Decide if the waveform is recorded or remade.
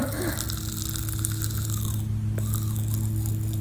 recorded